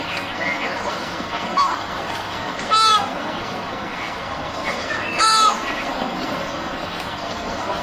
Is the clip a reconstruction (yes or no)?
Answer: yes